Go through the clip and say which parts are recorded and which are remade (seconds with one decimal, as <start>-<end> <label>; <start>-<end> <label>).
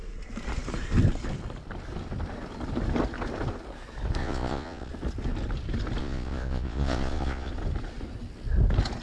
0.0-4.2 recorded; 4.2-4.9 remade; 4.9-6.0 recorded; 6.0-7.5 remade; 7.5-9.0 recorded